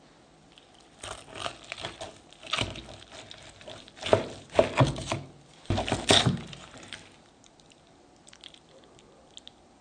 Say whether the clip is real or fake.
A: real